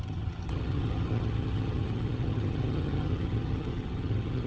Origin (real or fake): fake